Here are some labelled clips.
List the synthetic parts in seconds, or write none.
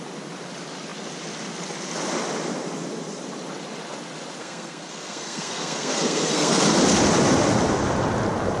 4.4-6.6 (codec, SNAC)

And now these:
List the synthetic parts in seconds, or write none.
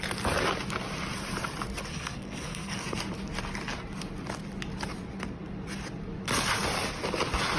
1.9-3.0 (codec, SNAC)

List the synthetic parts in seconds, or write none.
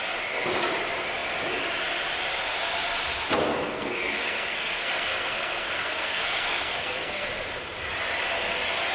3.5-7.3 (codec, SNAC)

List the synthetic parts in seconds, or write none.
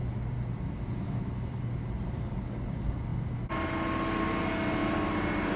4.8-5.6 (vocoder, BigVGAN v2)